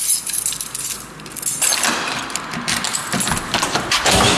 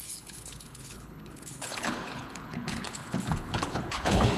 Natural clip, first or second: first